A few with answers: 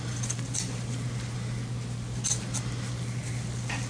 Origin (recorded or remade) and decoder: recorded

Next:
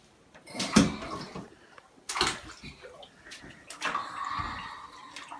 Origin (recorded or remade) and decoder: recorded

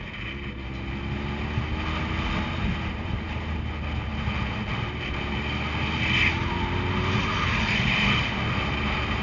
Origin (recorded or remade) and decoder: recorded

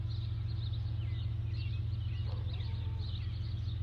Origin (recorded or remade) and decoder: recorded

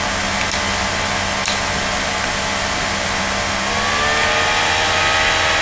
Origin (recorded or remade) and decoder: recorded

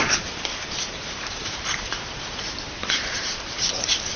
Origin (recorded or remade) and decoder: remade, vocoder, BigVGAN v2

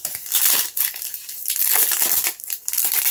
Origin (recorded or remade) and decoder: remade, vocoder, BigVGAN v2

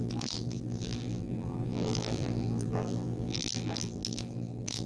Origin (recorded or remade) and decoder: remade, vocoder, BigVGAN v2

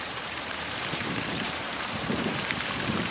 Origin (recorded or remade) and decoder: remade, vocoder, BigVGAN v2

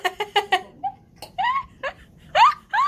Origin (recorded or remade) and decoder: recorded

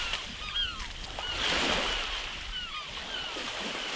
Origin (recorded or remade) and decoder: remade, vocoder, BigVGAN v2